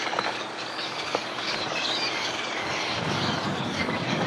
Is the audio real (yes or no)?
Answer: no